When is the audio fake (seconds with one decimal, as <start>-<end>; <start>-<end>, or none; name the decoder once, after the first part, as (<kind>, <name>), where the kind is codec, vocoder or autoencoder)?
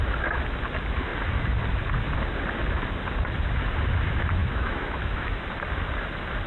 4.4-5.4 (autoencoder, DAC-VAE)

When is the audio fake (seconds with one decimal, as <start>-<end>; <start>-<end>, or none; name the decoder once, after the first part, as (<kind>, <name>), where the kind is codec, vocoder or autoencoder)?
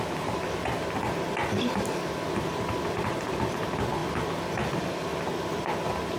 none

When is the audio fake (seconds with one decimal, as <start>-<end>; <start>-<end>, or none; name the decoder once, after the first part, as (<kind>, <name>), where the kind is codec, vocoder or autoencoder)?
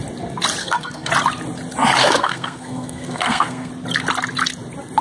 0.6-1.1 (codec, SNAC); 2.0-3.7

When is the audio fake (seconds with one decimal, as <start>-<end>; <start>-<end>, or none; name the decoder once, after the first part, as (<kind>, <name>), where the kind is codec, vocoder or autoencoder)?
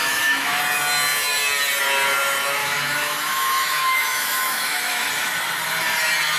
0.0-0.6 (autoencoder, DAC-VAE); 2.6-5.1